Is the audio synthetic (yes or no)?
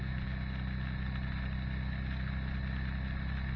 no